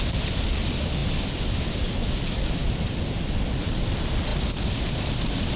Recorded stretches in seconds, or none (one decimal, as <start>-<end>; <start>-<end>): none